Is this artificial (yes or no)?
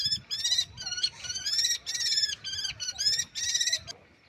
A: no